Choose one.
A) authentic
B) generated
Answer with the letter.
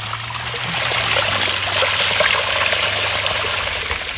A